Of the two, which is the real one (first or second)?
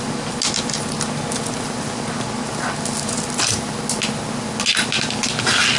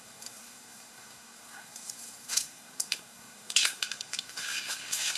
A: first